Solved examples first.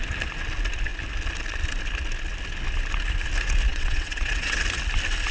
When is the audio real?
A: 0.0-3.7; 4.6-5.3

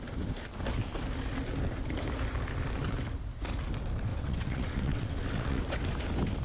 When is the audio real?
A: 0.0-4.1; 5.6-6.4

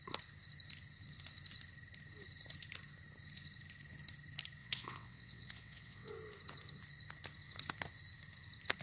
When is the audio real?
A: 0.0-4.6; 6.1-8.8

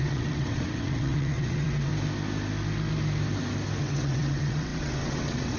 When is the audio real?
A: 1.9-3.8

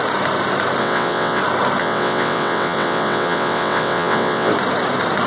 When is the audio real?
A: 0.0-0.8; 1.4-1.8; 4.5-5.3

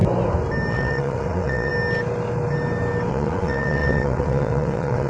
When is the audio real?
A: 0.0-0.7; 1.7-3.1

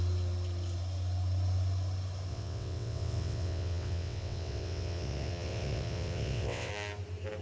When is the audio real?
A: 0.0-2.3; 6.7-7.4

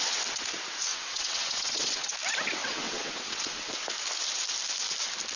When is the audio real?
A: 0.0-0.9; 2.1-2.6; 3.7-5.4